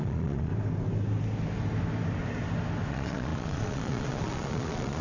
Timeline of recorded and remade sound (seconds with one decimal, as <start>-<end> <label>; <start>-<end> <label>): 0.0-0.5 remade; 0.5-2.9 recorded; 2.9-5.0 remade